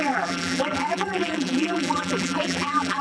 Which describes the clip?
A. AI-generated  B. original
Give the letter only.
A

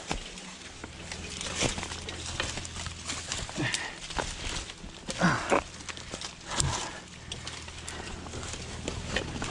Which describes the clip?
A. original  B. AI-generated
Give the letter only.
A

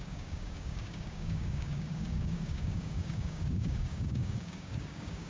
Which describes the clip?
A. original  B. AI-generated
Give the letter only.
B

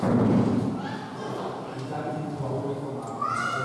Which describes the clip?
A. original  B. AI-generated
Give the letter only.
A